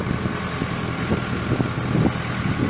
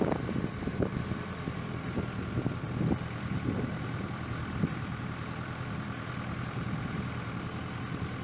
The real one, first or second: first